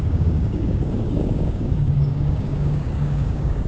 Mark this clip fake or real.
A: fake